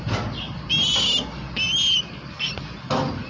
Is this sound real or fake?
real